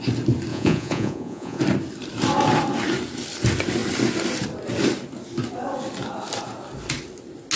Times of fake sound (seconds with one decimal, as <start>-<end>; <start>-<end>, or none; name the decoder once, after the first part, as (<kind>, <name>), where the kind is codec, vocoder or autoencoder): 0.5-1.6 (vocoder, Vocos)